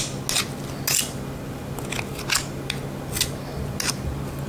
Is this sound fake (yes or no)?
no